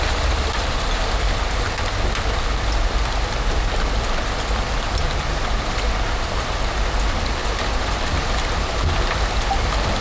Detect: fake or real real